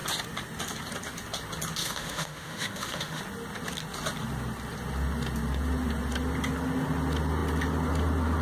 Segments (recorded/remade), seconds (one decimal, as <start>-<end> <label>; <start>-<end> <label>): 0.0-1.8 recorded; 1.8-3.2 remade; 3.2-8.4 recorded